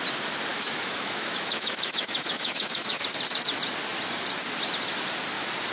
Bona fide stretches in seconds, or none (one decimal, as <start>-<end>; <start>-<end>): 0.0-0.5; 3.0-5.7